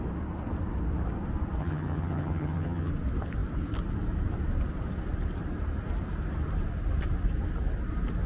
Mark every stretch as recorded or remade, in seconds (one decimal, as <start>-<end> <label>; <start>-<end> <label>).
0.0-1.6 recorded; 1.6-2.9 remade; 2.9-8.3 recorded